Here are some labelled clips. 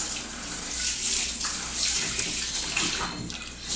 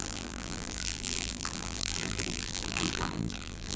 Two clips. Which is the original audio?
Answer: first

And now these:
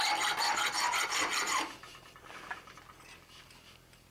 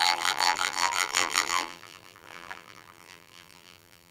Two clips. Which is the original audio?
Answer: first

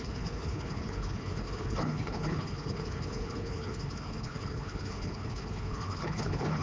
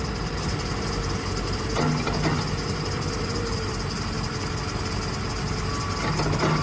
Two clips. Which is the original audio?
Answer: second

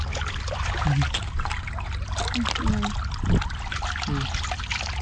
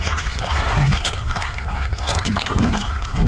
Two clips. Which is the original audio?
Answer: first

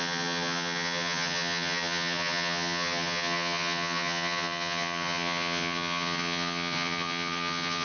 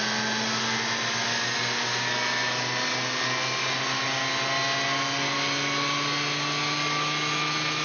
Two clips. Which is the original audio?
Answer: second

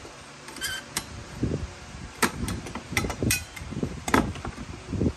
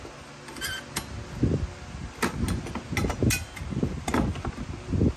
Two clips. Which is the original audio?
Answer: second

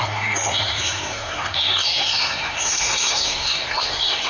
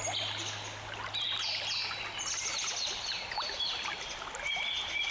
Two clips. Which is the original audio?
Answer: second